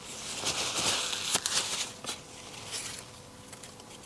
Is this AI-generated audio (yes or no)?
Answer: no